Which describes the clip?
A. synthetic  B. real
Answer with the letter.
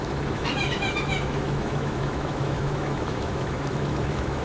A